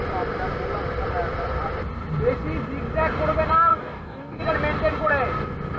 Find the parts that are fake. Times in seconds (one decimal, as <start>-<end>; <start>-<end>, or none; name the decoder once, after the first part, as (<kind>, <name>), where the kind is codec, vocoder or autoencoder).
3.7-4.4 (codec, DAC)